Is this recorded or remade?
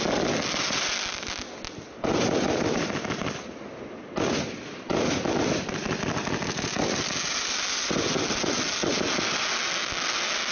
recorded